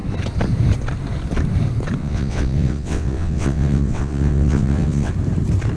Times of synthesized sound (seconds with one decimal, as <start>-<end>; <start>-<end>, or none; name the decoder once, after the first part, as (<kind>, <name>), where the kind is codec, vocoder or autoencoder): 2.0-5.1 (vocoder, WaveNeXt)